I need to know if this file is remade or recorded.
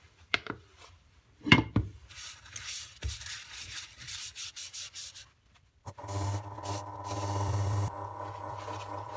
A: remade